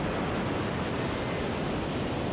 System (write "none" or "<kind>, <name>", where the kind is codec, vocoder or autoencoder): none